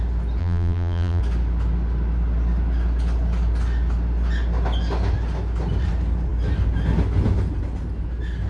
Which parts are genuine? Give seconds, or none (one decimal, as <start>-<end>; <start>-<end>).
0.0-0.4; 1.2-8.5